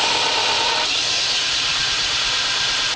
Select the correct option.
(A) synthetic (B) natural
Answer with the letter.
B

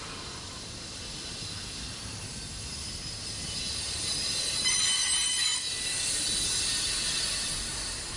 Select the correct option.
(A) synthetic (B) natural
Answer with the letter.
B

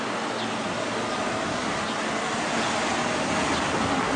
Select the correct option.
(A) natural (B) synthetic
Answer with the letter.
A